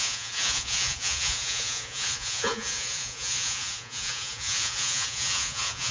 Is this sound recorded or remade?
remade